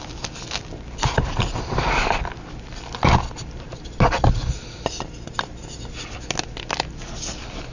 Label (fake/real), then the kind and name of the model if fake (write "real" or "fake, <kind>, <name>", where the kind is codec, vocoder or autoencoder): real